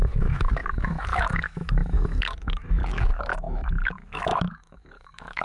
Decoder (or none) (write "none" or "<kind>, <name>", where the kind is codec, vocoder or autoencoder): autoencoder, DAC-VAE